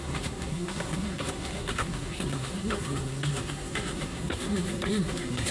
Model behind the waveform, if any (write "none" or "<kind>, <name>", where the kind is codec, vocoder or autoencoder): codec, SNAC